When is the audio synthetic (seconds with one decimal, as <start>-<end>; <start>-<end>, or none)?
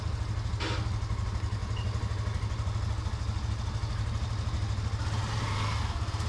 none